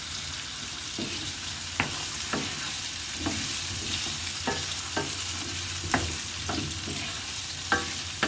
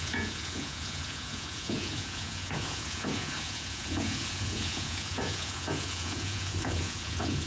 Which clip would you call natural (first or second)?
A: first